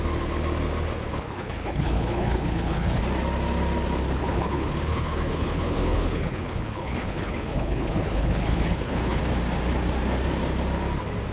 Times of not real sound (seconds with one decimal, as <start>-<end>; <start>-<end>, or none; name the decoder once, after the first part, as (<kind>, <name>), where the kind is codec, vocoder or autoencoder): 1.1-3.0 (codec, HILCodec); 4.2-9.2